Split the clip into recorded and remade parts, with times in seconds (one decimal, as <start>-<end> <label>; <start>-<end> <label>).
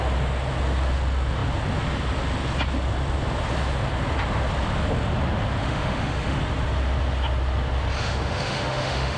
0.0-5.6 recorded; 5.6-6.4 remade; 6.4-8.0 recorded; 8.0-9.2 remade